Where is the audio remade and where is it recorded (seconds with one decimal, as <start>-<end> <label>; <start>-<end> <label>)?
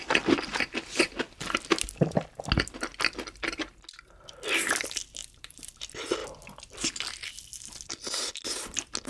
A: 0.0-1.7 recorded; 1.7-2.2 remade; 2.2-5.2 recorded; 5.2-5.8 remade; 5.8-9.1 recorded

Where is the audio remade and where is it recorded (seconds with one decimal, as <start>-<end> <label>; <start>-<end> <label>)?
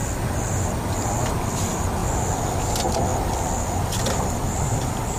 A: 0.0-1.3 recorded; 1.3-3.1 remade; 3.1-4.1 recorded; 4.1-5.2 remade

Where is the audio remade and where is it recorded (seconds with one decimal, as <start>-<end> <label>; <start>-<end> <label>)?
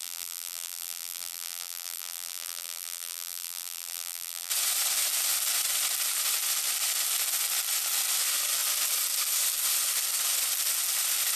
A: 0.0-4.5 remade; 4.5-11.4 recorded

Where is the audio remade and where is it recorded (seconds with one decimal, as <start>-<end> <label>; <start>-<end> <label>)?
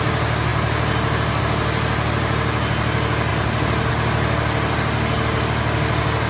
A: 0.0-6.3 recorded